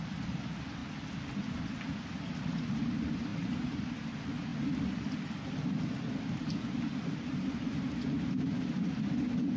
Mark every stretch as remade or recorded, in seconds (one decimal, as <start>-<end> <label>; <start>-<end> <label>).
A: 0.0-0.8 remade; 0.8-2.4 recorded; 2.4-4.5 remade; 4.5-5.9 recorded; 5.9-9.6 remade